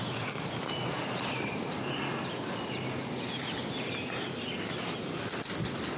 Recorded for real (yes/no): yes